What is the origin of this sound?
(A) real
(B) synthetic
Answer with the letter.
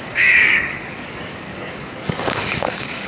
B